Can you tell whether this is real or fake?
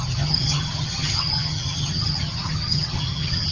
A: fake